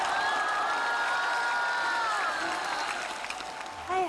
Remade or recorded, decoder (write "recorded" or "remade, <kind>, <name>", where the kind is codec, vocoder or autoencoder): recorded